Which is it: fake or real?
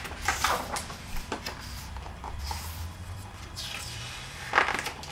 fake